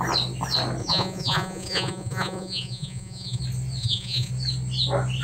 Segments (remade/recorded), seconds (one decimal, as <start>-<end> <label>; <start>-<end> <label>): 0.0-0.8 recorded; 0.8-3.4 remade; 3.4-3.8 recorded; 3.8-4.3 remade; 4.3-5.2 recorded